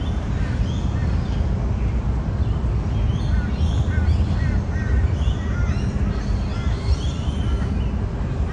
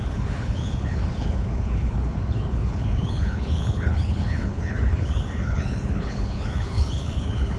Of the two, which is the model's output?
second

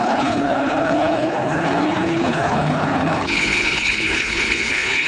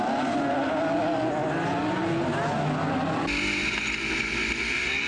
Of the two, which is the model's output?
first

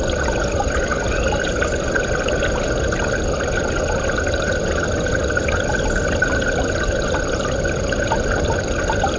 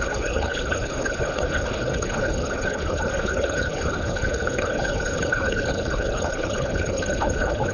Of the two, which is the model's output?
second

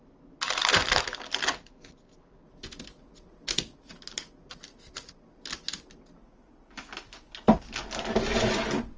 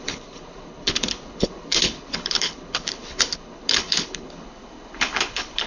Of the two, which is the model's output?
second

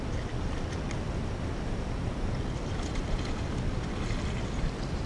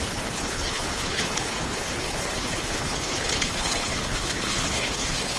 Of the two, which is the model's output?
second